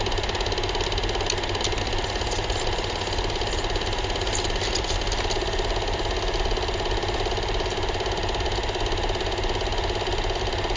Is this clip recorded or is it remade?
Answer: recorded